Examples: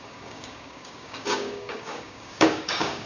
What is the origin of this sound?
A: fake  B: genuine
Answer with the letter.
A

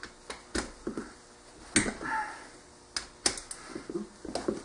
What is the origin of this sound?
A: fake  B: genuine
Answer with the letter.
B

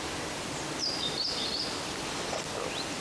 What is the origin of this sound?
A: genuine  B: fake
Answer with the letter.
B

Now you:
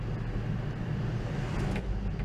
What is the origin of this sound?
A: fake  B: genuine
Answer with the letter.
B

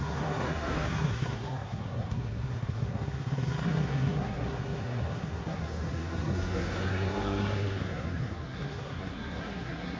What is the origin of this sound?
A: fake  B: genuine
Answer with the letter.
A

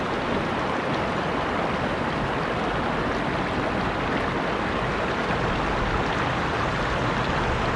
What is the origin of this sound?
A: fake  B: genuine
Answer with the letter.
B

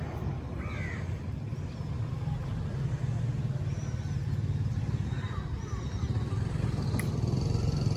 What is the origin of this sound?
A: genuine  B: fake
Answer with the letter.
A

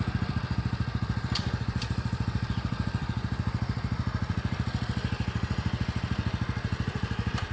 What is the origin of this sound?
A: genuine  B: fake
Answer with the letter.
B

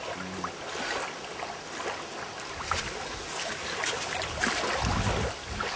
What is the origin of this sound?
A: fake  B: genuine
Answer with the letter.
B